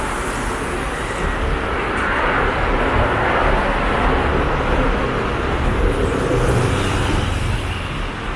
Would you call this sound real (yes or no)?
yes